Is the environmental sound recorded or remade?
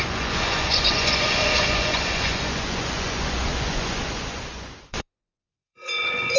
remade